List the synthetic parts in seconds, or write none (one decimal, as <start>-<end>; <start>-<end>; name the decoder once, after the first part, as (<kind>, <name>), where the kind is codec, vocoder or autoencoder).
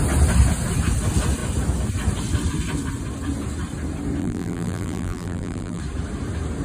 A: 4.2-5.8 (vocoder, BigVGAN v2)